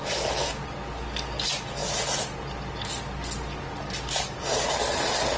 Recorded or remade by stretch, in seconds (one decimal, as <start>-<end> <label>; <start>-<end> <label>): 0.0-5.4 recorded